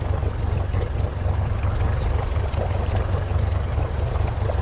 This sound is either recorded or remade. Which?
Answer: recorded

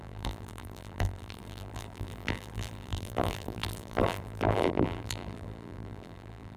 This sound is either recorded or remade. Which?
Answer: remade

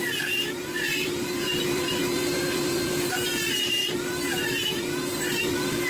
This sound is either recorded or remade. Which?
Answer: remade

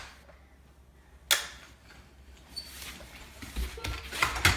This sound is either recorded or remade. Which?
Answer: recorded